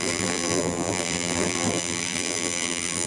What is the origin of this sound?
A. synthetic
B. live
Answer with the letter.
A